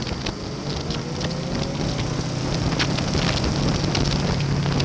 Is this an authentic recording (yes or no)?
yes